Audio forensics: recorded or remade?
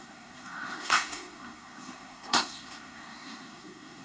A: remade